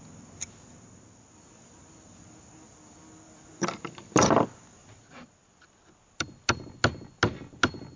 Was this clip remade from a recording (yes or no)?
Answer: no